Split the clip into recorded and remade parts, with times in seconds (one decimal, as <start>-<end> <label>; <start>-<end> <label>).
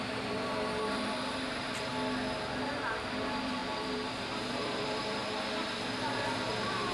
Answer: 0.0-1.9 remade; 1.9-2.7 recorded; 2.7-5.2 remade; 5.2-6.0 recorded; 6.0-6.9 remade